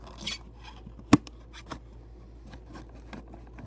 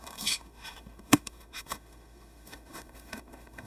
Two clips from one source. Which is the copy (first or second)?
second